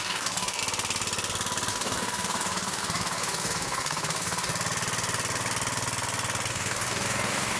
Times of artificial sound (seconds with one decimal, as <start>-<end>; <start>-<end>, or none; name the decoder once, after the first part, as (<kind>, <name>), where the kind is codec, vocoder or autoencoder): 0.0-0.6 (codec, DAC); 1.7-4.5; 6.5-7.6